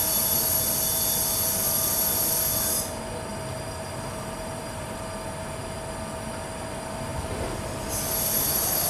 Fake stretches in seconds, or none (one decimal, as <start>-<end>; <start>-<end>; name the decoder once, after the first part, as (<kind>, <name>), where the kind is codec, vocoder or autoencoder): 3.3-5.0 (vocoder, BigVGAN v2)